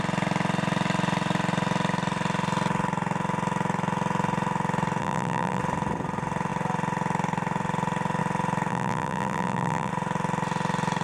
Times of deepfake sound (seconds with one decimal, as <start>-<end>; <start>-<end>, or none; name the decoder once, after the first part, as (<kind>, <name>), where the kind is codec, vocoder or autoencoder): 5.0-5.6 (vocoder, BigVGAN v2); 8.7-9.9